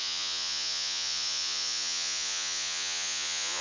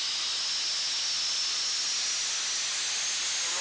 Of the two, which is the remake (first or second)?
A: first